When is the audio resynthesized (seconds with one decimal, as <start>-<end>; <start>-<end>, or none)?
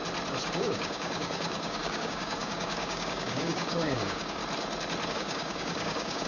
0.5-4.4; 5.1-6.3